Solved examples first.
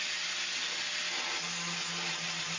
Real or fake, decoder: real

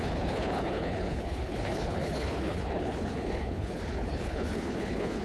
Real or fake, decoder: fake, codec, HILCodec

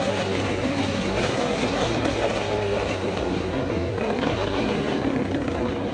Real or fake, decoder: fake, codec, SNAC